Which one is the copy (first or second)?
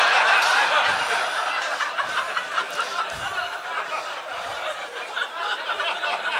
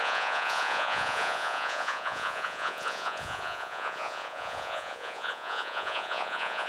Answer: second